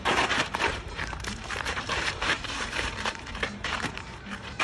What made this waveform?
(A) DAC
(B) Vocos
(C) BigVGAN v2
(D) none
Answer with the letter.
C